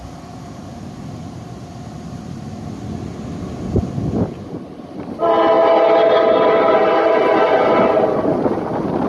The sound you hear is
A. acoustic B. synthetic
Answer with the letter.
A